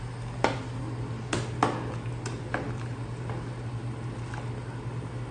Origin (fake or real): real